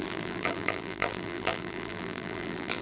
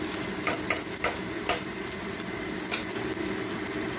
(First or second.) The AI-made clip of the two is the first